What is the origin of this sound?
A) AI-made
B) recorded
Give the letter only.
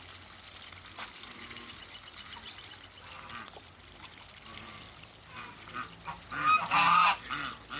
B